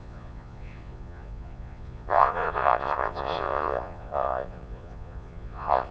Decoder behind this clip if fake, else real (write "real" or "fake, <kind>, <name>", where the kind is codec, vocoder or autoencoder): fake, vocoder, Vocos